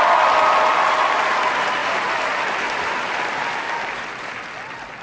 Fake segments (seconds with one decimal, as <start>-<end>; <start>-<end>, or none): 1.8-5.0